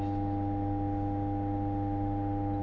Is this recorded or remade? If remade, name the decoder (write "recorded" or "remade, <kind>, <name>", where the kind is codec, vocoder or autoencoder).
recorded